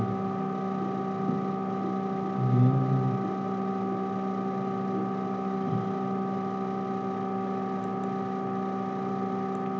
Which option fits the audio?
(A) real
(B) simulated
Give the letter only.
A